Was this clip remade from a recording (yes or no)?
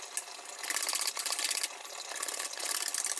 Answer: no